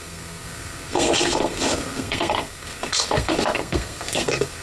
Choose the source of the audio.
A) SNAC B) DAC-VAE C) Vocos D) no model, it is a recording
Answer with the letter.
A